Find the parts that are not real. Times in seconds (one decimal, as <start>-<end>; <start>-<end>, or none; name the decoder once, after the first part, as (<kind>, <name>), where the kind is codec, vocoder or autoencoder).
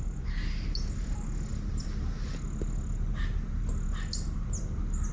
none